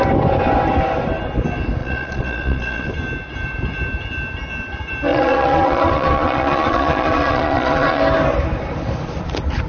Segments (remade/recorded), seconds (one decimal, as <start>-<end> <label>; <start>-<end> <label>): 0.0-1.8 recorded; 1.8-2.9 remade; 2.9-5.1 recorded; 5.1-8.0 remade; 8.0-9.7 recorded

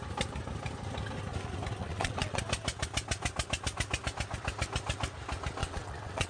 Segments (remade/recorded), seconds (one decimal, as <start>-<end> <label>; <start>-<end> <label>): 0.0-1.8 recorded; 1.8-2.4 remade; 2.4-5.6 recorded; 5.6-6.3 remade

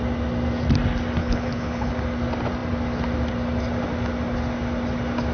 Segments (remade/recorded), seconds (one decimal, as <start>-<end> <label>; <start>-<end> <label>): 0.0-1.2 recorded; 1.2-1.9 remade; 1.9-5.3 recorded

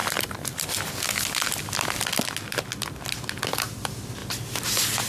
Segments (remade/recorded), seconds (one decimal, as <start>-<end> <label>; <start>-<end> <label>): 0.0-5.1 recorded

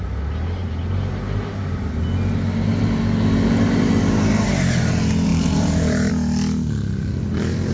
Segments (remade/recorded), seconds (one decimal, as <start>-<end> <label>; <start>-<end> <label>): 0.0-5.3 recorded; 5.3-6.1 remade; 6.1-7.7 recorded

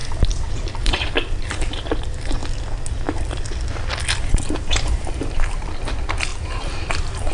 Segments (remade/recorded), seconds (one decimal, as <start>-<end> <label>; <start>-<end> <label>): 0.0-0.8 recorded; 0.8-2.4 remade; 2.4-4.3 recorded; 4.3-7.3 remade

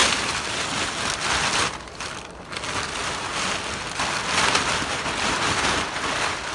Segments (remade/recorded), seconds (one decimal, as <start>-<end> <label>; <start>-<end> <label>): 0.0-6.5 recorded

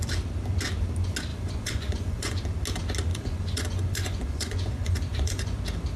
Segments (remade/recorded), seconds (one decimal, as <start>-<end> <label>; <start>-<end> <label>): 0.0-1.3 recorded; 1.3-2.4 remade; 2.4-3.1 recorded; 3.1-5.6 remade; 5.6-6.0 recorded